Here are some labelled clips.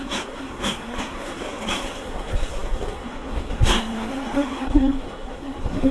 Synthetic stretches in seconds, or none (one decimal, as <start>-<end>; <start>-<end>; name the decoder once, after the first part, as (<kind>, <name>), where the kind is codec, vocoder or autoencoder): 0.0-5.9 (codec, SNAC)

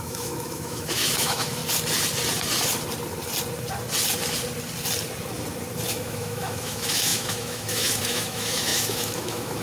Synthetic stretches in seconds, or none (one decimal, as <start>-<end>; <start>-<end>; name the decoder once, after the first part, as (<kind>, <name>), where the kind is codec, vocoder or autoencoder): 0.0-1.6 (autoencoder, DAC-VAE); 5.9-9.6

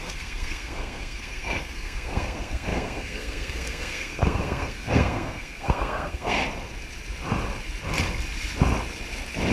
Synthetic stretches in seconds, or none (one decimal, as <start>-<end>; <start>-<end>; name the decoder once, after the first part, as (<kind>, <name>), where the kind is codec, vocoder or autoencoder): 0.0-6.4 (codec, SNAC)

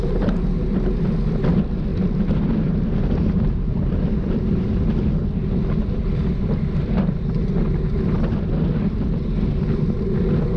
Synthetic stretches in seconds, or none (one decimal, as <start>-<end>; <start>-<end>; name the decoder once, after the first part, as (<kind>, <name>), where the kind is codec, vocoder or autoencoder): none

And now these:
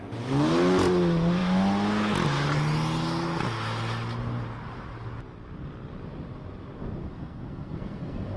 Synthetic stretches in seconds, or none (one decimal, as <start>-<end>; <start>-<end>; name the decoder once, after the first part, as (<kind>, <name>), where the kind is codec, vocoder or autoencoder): 7.0-8.4 (codec, SNAC)

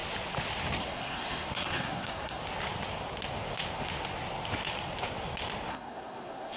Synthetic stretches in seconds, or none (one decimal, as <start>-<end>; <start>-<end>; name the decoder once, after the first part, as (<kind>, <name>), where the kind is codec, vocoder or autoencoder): 0.8-2.4 (codec, SNAC); 5.7-6.6

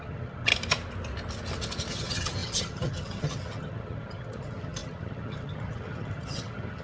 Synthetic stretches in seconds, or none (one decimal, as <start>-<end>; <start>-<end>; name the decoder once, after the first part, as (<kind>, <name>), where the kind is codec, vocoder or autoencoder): 0.0-0.5 (vocoder, HiFi-GAN); 1.9-6.8

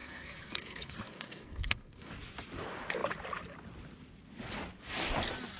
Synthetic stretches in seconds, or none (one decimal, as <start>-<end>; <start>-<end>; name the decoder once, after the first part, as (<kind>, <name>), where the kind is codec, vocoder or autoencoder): 0.0-2.1 (codec, SNAC)